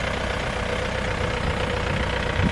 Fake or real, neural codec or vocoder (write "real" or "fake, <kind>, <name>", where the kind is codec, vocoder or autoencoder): real